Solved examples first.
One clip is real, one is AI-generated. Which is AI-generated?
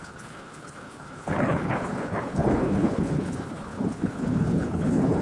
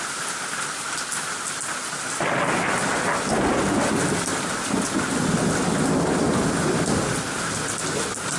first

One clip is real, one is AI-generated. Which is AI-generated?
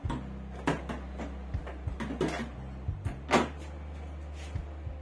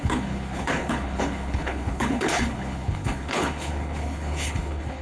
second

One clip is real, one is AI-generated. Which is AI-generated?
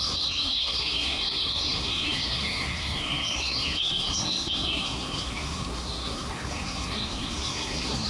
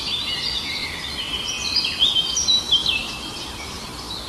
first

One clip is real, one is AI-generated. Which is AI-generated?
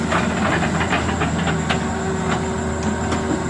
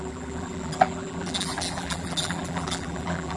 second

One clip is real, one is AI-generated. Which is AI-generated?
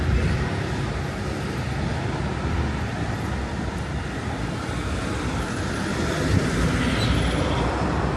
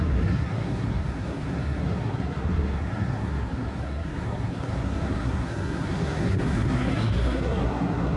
second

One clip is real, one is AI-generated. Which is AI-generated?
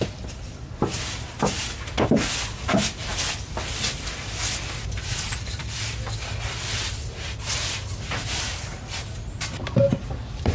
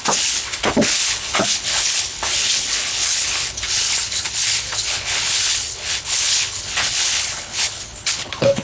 second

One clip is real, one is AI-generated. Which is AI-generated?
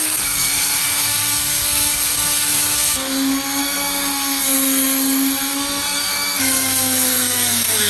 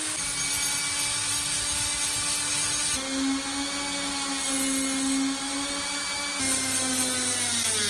first